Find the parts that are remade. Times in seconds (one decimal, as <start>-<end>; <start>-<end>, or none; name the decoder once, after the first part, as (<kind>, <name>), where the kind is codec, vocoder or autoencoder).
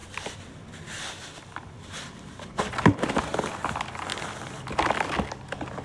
0.0-3.5 (vocoder, BigVGAN v2)